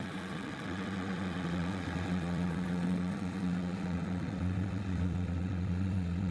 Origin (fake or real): fake